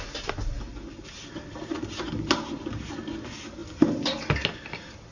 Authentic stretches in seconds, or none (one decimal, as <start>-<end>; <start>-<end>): 0.0-5.1